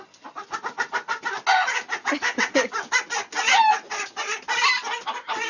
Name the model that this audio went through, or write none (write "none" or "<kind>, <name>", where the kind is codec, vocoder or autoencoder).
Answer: none